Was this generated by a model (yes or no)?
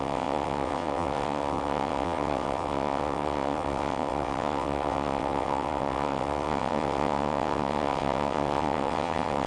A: yes